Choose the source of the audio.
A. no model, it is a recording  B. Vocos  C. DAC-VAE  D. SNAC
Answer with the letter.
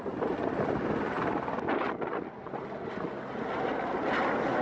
A